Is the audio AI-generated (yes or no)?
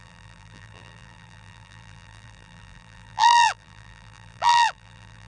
yes